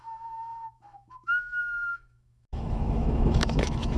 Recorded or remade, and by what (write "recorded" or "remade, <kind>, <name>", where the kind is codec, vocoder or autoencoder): remade, autoencoder, DAC-VAE